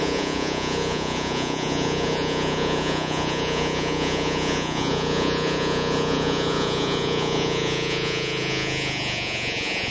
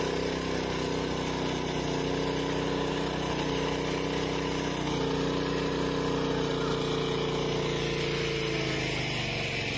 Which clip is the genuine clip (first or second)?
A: second